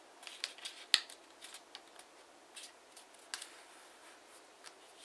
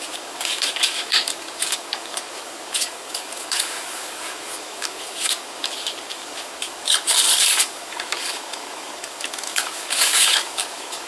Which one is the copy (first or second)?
second